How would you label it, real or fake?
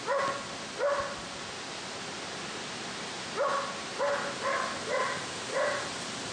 real